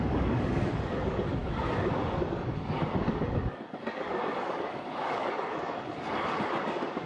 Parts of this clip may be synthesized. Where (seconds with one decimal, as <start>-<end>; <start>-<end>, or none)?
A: 0.0-7.1